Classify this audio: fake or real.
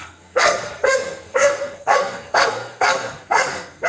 fake